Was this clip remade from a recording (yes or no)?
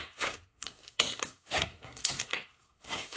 yes